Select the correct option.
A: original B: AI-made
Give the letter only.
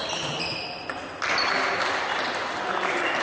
A